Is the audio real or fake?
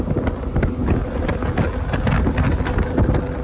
real